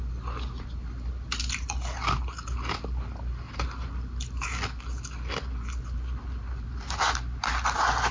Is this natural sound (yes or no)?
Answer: yes